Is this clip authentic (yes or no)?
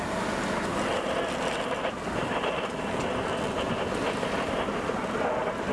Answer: yes